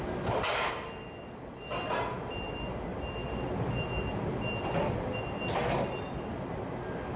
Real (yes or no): yes